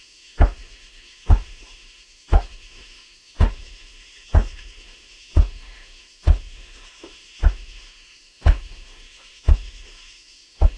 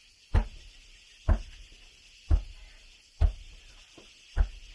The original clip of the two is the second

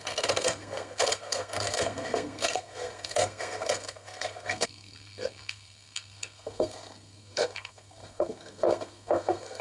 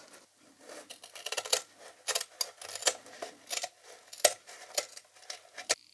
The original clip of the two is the second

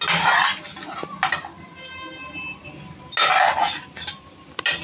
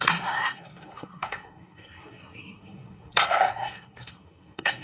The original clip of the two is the first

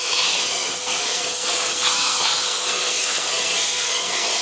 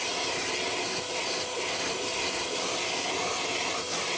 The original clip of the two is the second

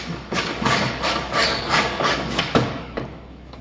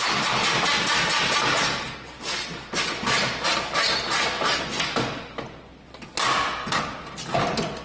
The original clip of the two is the second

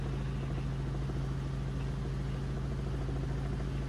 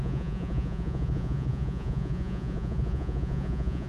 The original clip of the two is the first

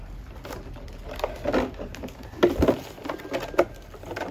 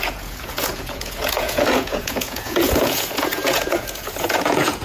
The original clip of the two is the first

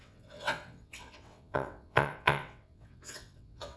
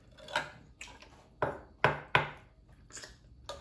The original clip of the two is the second